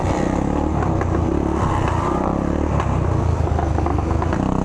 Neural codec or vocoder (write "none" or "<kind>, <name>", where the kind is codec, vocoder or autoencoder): none